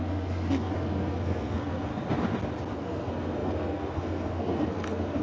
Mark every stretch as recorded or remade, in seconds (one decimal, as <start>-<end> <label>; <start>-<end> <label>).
0.0-1.9 remade; 1.9-2.8 recorded; 2.8-5.2 remade